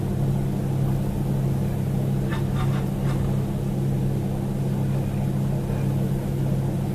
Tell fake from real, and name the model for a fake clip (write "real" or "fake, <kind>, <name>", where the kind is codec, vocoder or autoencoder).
real